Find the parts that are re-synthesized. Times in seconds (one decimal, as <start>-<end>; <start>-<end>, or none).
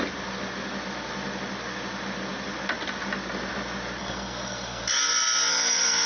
4.0-4.8; 5.5-6.1